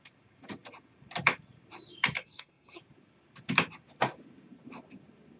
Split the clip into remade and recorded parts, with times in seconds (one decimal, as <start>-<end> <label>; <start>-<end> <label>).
0.0-2.2 recorded; 2.2-2.8 remade; 2.8-5.4 recorded